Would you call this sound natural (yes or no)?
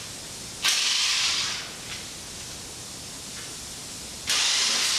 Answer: yes